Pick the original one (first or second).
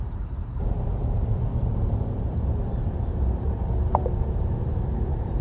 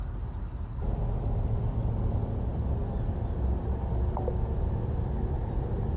second